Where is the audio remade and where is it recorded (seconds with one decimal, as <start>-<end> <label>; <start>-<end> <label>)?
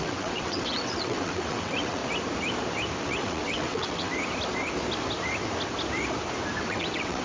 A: 0.0-2.0 remade; 2.0-3.0 recorded; 3.0-4.1 remade; 4.1-6.6 recorded; 6.6-7.2 remade